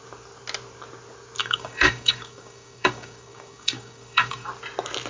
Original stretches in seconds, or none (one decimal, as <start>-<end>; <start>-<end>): 0.0-1.4; 4.5-5.1